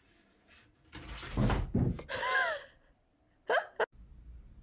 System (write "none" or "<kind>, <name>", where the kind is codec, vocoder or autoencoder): none